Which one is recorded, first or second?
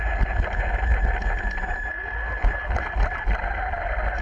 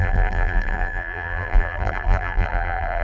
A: first